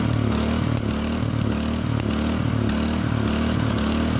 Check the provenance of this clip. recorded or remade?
recorded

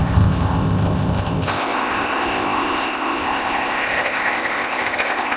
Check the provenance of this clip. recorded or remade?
remade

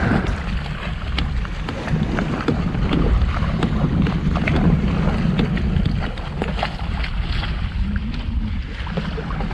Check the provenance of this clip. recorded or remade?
recorded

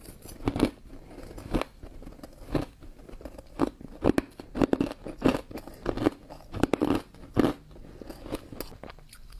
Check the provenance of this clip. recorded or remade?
recorded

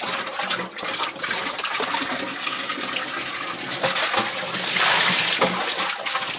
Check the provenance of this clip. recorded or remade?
recorded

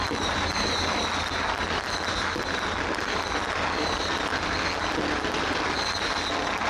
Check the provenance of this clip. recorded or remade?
recorded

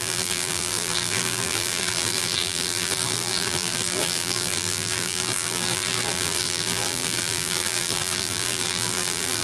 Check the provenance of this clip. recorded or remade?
remade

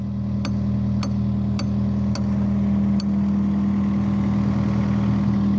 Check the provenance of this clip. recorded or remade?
recorded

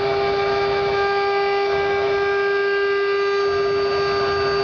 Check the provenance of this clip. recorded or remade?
recorded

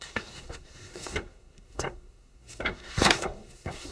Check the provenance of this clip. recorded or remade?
remade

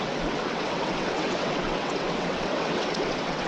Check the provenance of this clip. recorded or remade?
remade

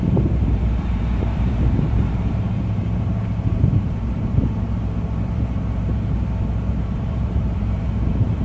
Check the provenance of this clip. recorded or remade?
remade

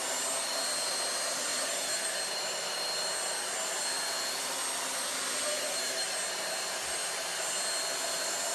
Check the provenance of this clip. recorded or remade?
recorded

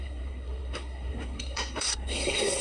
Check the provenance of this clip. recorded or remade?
remade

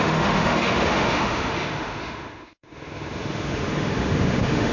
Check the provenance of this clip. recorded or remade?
remade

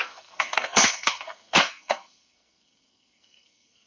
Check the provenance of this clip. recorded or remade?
remade